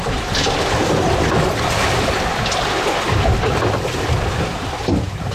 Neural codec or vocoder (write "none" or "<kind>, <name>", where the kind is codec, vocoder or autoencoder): none